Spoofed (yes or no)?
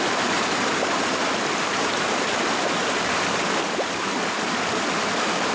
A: no